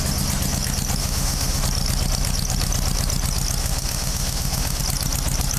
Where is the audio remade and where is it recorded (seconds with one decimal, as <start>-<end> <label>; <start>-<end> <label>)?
0.0-1.0 recorded; 1.0-1.6 remade; 1.6-3.6 recorded; 3.6-4.8 remade; 4.8-5.6 recorded